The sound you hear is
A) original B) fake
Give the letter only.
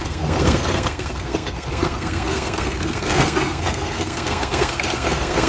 B